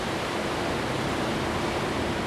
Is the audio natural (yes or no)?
yes